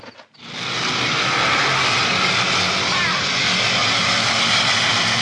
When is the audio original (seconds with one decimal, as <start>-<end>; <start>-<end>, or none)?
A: 0.0-5.2